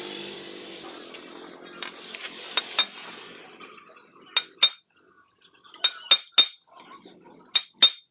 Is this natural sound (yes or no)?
yes